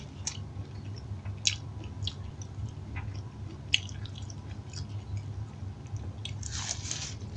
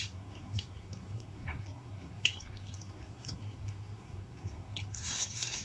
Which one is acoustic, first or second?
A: first